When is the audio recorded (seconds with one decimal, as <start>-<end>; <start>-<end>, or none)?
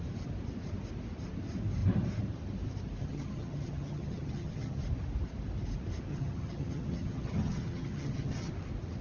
0.0-3.0; 4.8-6.1; 8.5-9.0